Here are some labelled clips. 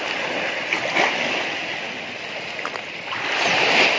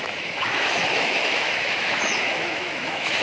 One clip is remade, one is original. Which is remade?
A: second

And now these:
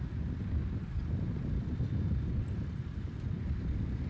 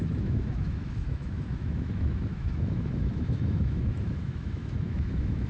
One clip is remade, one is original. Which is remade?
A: second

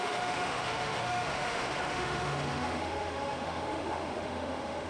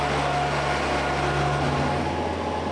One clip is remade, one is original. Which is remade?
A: first